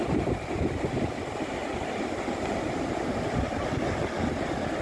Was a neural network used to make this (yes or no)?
yes